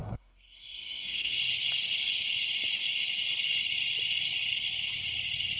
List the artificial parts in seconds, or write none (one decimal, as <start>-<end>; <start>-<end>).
0.0-1.4